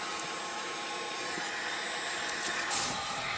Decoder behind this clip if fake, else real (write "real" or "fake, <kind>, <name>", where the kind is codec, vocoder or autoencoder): real